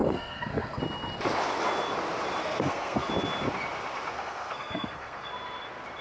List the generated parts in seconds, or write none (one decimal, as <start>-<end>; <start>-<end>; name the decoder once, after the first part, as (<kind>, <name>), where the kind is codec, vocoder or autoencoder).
0.0-0.8 (codec, SNAC); 2.4-3.1; 4.1-5.3